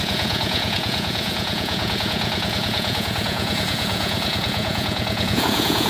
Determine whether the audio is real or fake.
fake